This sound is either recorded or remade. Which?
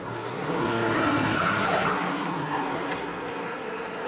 remade